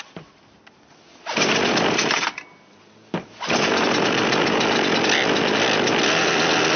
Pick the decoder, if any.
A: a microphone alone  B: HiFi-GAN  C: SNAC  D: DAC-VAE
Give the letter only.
A